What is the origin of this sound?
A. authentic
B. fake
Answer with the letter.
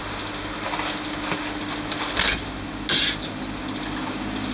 A